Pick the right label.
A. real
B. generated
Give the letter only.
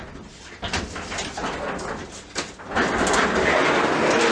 A